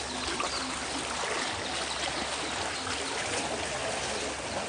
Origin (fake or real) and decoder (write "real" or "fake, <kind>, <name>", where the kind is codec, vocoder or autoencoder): real